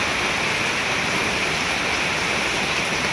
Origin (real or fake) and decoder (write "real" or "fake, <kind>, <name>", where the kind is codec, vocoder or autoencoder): real